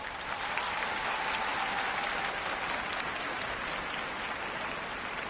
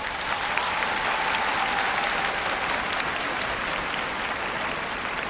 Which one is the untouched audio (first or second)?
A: first